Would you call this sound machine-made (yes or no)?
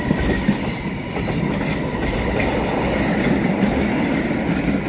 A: no